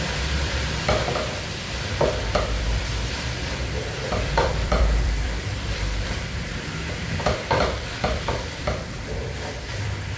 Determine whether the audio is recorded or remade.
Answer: remade